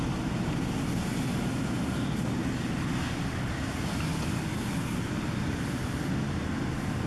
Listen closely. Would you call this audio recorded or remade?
recorded